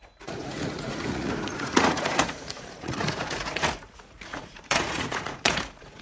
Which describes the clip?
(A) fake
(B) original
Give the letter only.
A